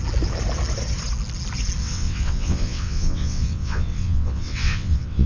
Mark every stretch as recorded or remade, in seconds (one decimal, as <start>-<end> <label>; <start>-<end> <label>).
0.0-1.8 recorded; 1.8-5.3 remade